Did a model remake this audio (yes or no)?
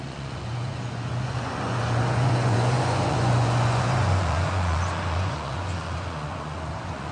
yes